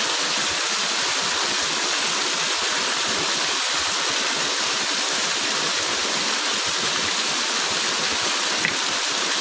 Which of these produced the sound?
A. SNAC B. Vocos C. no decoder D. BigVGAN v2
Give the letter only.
C